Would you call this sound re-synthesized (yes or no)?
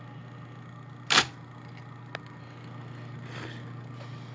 no